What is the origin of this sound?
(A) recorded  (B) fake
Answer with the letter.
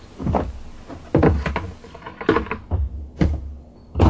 A